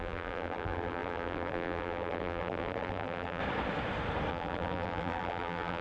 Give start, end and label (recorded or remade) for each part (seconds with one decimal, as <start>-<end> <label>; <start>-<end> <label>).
0.0-3.4 remade; 3.4-4.3 recorded; 4.3-5.8 remade